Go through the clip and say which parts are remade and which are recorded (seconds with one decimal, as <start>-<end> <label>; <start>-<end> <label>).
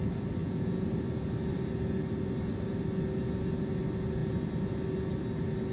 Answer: 0.0-0.4 recorded; 0.4-0.9 remade; 0.9-5.7 recorded